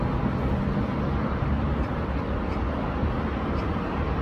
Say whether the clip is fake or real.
real